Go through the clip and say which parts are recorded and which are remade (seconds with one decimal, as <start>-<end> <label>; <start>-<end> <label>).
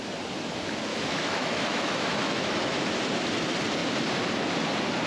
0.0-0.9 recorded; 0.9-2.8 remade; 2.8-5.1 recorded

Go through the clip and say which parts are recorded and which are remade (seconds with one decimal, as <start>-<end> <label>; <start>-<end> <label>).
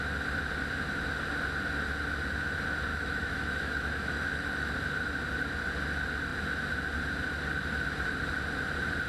0.0-2.9 recorded; 2.9-4.7 remade; 4.7-9.1 recorded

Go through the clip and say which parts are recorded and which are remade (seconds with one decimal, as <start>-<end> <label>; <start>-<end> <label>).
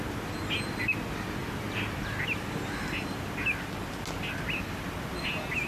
0.0-5.7 recorded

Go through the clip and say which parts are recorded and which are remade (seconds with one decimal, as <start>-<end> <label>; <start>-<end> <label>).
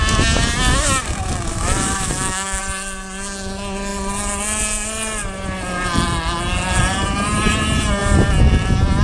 0.0-1.5 recorded; 1.5-2.6 remade; 2.6-9.0 recorded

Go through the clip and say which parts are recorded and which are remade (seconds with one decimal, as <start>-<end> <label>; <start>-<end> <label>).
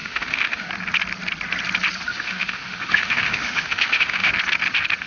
0.0-0.7 remade; 0.7-2.1 recorded; 2.1-4.3 remade; 4.3-5.1 recorded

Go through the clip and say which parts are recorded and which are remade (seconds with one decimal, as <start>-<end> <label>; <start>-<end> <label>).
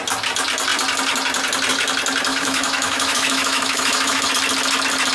0.0-2.3 recorded; 2.3-4.3 remade; 4.3-5.1 recorded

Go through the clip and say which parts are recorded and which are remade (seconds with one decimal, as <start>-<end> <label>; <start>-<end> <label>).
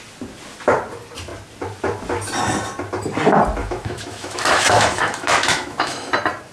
0.0-3.6 recorded; 3.6-6.1 remade; 6.1-6.5 recorded